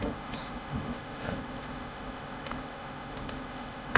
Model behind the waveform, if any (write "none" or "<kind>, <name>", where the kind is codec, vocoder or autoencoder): autoencoder, DAC-VAE